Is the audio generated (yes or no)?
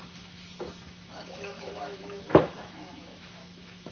yes